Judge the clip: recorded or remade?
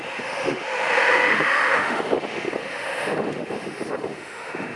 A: remade